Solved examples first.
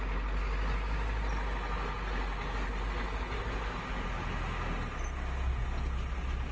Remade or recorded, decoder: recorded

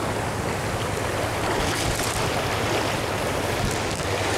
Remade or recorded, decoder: recorded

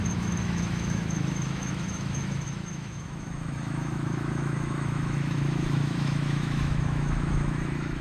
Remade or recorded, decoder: remade, autoencoder, DAC-VAE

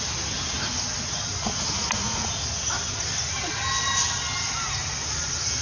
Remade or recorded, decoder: recorded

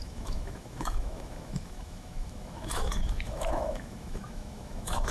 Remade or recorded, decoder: remade, autoencoder, DAC-VAE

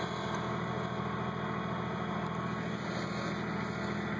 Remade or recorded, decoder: recorded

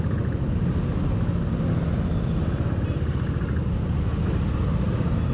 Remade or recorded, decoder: recorded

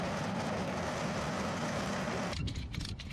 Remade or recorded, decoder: recorded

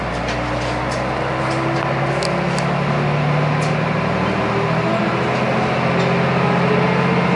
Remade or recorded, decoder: recorded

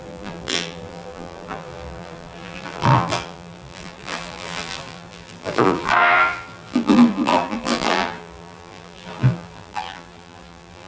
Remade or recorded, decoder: remade, vocoder, BigVGAN v2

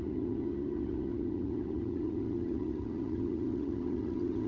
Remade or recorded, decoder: remade, vocoder, HiFi-GAN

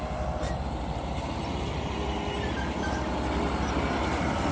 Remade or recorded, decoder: recorded